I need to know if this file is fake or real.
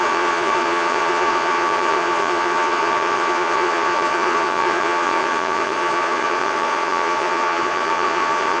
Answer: fake